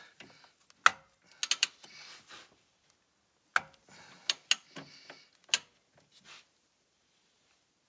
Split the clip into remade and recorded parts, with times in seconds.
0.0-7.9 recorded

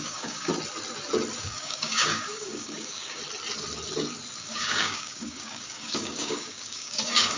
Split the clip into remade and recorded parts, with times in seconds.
0.0-0.5 remade; 0.5-1.4 recorded; 1.4-3.2 remade; 3.2-4.4 recorded; 4.4-7.4 remade

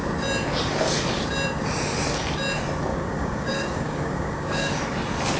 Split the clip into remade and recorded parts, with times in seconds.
0.0-2.9 recorded; 2.9-4.7 remade; 4.7-5.4 recorded

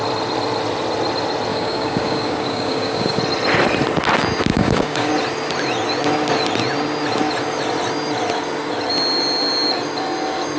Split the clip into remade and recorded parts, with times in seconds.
0.0-1.5 recorded; 1.5-3.2 remade; 3.2-4.5 recorded; 4.5-5.1 remade; 5.1-10.6 recorded